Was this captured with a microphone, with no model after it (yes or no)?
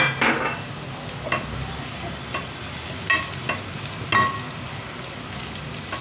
yes